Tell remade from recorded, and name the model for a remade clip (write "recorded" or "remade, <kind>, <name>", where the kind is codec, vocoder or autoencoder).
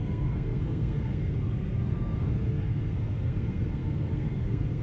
remade, codec, SNAC